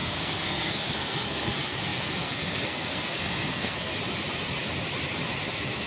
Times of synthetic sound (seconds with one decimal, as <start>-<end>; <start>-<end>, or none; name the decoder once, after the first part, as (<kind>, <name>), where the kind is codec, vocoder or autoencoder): 0.0-3.9 (codec, SNAC); 5.5-5.9